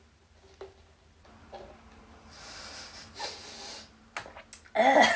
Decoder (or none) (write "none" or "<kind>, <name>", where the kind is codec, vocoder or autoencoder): none